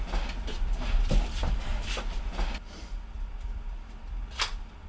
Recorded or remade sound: recorded